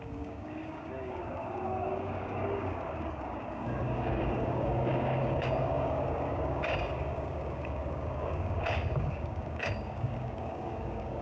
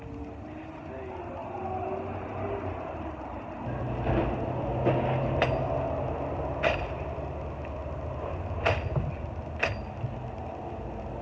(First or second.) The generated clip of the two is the first